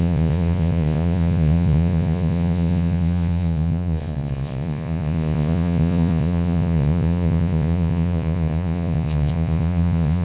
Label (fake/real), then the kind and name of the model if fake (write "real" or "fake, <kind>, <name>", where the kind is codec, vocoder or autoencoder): fake, vocoder, Vocos